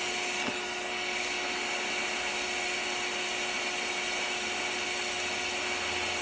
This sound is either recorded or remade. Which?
recorded